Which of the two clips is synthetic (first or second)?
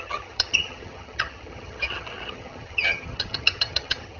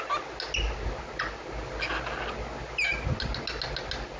first